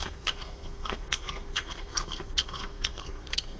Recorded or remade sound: remade